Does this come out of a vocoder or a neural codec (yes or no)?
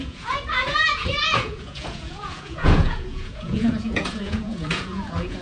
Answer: yes